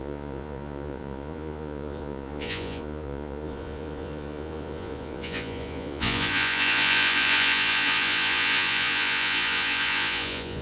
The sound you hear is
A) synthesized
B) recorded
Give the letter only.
A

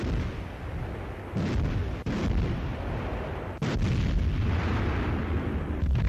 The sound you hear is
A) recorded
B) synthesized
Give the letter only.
A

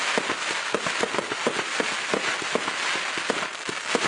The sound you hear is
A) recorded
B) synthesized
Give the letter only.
A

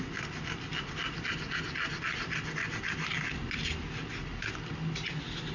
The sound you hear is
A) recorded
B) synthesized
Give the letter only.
A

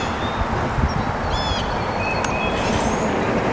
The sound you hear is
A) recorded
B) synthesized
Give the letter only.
A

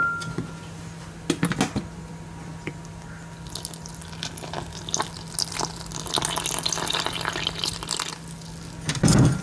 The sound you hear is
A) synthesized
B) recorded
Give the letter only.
B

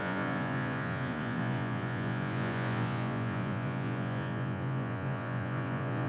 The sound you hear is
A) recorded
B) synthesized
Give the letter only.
B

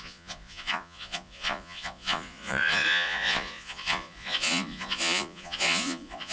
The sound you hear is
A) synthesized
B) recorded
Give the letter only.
A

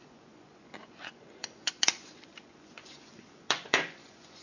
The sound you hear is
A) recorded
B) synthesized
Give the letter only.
B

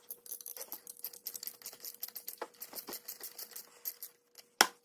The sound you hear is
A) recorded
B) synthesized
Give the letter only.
A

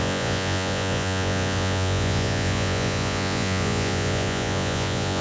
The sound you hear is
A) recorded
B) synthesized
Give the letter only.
B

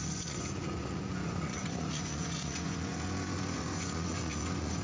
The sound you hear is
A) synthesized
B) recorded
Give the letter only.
A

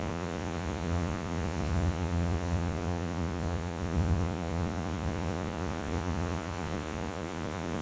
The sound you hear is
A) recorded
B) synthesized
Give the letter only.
B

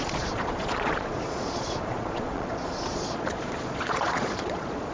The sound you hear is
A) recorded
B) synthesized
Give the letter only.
B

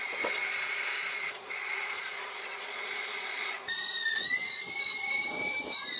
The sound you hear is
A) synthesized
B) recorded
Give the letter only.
A